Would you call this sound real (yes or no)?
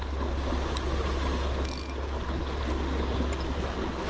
yes